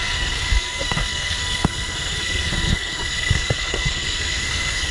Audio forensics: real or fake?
fake